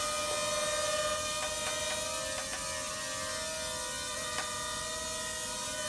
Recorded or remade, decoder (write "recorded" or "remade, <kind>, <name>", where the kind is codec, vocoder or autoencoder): recorded